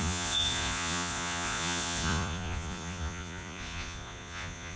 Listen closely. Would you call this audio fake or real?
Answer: fake